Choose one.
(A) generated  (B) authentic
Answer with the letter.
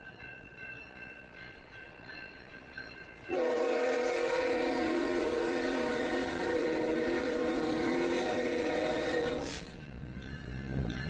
A